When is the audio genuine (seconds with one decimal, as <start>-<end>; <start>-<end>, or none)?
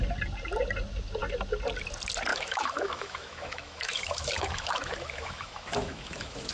0.0-2.3